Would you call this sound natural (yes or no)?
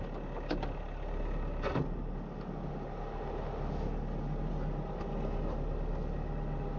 yes